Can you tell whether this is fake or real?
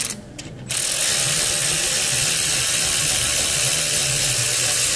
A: real